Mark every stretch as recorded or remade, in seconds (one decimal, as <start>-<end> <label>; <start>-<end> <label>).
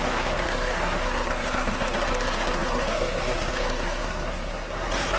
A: 0.0-5.2 remade